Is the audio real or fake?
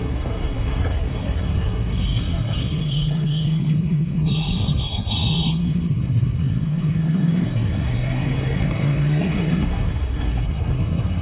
fake